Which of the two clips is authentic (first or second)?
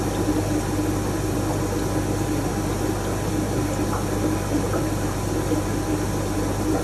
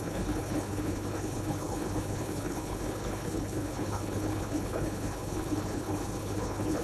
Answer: first